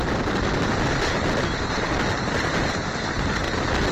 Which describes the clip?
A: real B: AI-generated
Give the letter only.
A